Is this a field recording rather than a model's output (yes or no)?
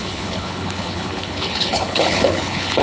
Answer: no